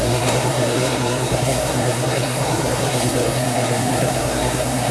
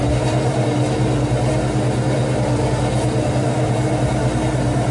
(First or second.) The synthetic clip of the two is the first